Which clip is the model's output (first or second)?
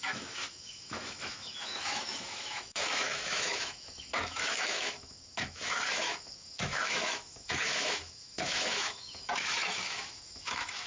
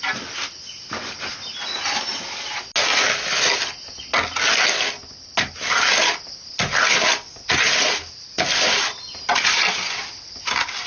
first